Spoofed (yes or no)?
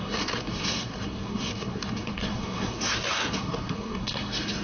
yes